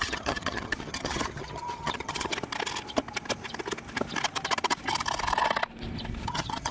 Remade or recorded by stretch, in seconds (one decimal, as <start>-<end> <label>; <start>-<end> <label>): 0.0-2.3 remade; 2.3-6.3 recorded; 6.3-6.7 remade